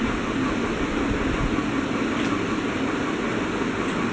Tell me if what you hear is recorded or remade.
recorded